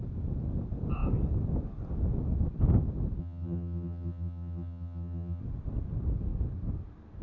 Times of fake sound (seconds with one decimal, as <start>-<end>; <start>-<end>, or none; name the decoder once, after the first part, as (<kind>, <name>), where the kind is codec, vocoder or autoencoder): 3.2-5.4 (vocoder, HiFi-GAN)